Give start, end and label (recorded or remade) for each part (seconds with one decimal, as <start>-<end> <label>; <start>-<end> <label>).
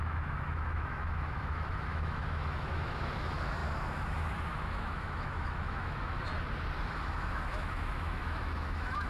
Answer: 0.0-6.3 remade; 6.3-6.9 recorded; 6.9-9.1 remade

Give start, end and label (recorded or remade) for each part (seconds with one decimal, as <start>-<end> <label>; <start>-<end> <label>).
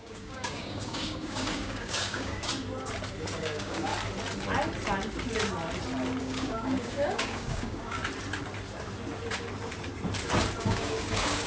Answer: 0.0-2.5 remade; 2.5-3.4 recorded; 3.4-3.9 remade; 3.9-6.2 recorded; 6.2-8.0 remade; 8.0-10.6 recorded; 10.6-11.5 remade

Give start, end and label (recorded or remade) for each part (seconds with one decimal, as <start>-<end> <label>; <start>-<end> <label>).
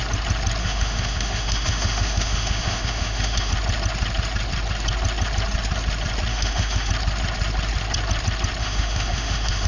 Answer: 0.0-0.6 recorded; 0.6-3.5 remade; 3.5-6.3 recorded; 6.3-6.9 remade; 6.9-8.6 recorded; 8.6-9.7 remade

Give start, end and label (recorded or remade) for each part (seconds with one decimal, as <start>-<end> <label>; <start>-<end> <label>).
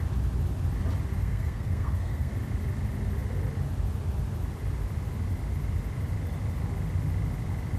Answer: 0.0-1.2 recorded; 1.2-2.3 remade; 2.3-7.8 recorded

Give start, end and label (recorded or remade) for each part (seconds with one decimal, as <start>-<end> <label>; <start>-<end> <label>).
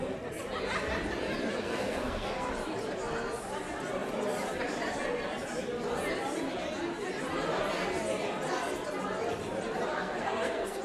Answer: 0.0-1.6 recorded; 1.6-2.5 remade; 2.5-9.9 recorded; 9.9-10.8 remade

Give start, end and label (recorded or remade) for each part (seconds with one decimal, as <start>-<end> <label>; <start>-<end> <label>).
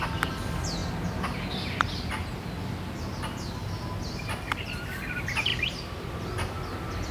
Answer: 0.0-5.5 recorded; 5.5-6.1 remade; 6.1-7.1 recorded